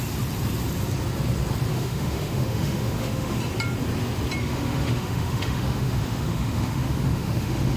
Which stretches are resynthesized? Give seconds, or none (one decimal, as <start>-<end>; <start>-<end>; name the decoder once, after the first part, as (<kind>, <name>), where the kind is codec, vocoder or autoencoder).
1.7-3.4 (autoencoder, DAC-VAE); 4.4-7.8